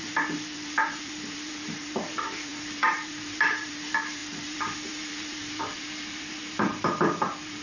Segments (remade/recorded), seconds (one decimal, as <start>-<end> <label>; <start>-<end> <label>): 0.0-7.6 remade